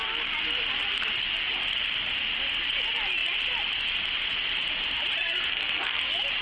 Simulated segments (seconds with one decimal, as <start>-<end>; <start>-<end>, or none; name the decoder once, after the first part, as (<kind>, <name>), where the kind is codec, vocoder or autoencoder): 5.5-6.0 (codec, SNAC)